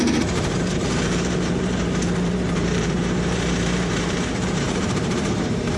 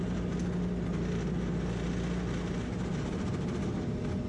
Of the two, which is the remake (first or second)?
first